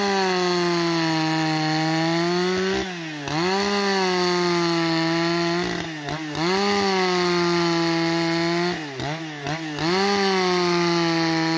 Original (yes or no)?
yes